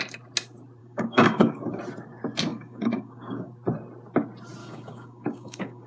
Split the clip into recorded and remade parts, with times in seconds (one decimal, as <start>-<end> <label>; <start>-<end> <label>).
0.0-0.8 recorded; 0.8-1.8 remade; 1.8-2.5 recorded; 2.5-3.5 remade; 3.5-4.6 recorded; 4.6-5.9 remade